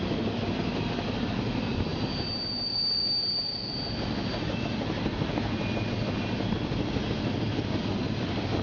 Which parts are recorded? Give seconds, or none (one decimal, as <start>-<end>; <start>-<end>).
0.0-8.6